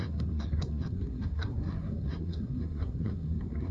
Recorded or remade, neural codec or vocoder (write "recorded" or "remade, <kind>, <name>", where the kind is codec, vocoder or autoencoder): remade, codec, SNAC